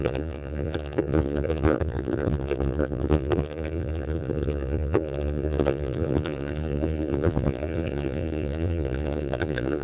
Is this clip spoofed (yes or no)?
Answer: yes